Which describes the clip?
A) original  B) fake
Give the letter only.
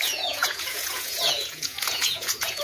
B